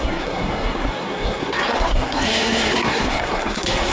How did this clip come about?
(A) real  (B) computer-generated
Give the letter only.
B